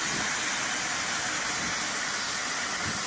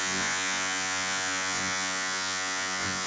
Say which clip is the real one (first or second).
first